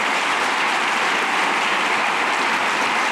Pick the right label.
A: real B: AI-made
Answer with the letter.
A